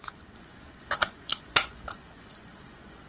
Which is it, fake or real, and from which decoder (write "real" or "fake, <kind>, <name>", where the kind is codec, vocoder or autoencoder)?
fake, vocoder, Vocos